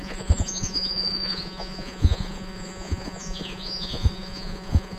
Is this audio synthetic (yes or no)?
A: yes